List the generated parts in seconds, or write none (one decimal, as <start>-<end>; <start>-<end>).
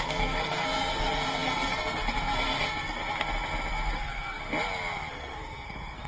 0.0-3.0; 3.9-4.4; 5.1-6.1